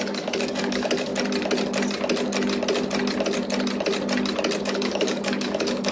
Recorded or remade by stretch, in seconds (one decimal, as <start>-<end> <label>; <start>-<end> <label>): 0.0-1.1 remade; 1.1-4.6 recorded; 4.6-5.9 remade